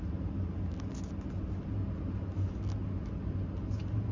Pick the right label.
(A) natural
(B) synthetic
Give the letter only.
A